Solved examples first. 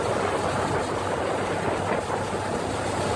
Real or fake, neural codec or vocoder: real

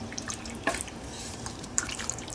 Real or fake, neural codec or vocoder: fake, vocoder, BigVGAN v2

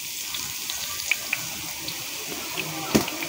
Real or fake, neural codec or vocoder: real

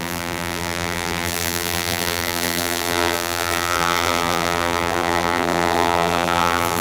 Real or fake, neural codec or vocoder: fake, vocoder, BigVGAN v2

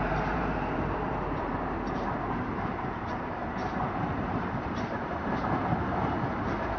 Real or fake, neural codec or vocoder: fake, vocoder, BigVGAN v2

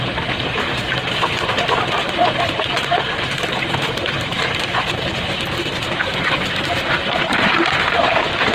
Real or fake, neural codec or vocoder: fake, vocoder, BigVGAN v2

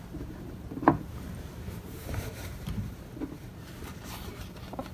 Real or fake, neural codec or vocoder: fake, vocoder, BigVGAN v2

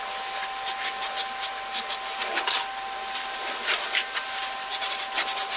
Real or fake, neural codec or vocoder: fake, vocoder, BigVGAN v2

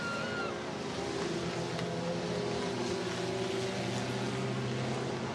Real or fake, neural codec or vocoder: real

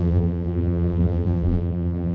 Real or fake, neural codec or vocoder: fake, vocoder, BigVGAN v2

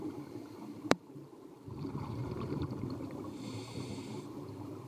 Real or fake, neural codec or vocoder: fake, vocoder, BigVGAN v2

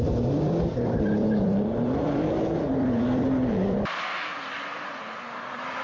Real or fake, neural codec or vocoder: fake, vocoder, BigVGAN v2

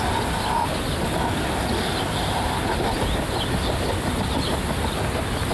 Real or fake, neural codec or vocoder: real